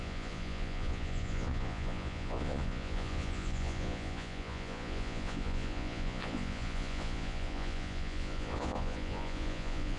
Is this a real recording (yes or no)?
no